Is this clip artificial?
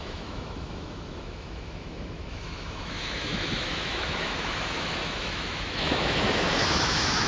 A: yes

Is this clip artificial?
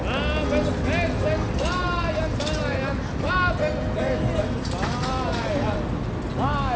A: no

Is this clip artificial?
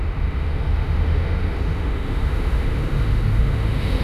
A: yes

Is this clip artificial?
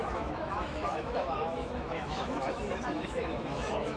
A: yes